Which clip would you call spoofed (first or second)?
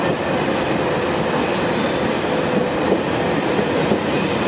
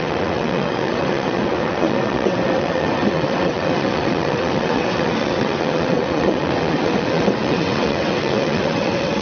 second